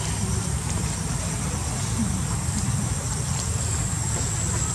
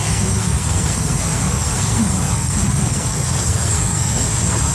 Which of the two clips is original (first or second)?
first